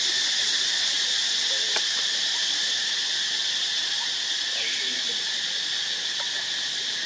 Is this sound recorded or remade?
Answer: remade